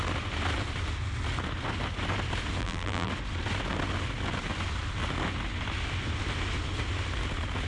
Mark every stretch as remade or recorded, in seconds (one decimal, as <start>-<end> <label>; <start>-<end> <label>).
0.0-2.6 recorded; 2.6-3.1 remade; 3.1-7.7 recorded